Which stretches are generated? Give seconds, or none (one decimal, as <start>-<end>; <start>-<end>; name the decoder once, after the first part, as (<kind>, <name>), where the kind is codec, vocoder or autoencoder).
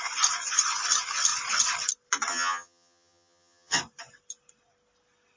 2.3-3.8 (vocoder, HiFi-GAN)